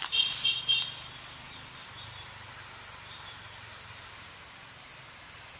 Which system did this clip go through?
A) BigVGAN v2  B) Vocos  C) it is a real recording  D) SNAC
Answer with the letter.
C